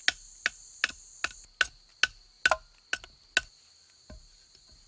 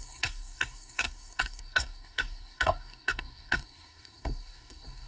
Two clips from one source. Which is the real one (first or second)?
first